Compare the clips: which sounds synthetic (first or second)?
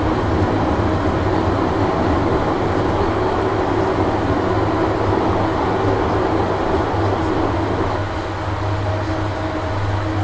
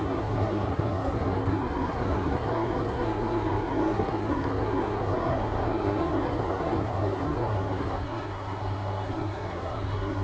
second